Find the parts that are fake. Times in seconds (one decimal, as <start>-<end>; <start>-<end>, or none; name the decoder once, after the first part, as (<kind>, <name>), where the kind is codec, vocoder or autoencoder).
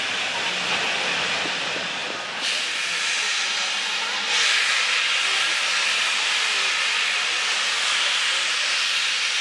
none